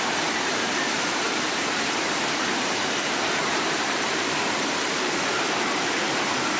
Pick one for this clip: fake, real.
fake